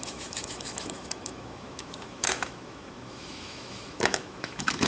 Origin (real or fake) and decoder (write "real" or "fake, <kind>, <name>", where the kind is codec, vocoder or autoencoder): fake, autoencoder, DAC-VAE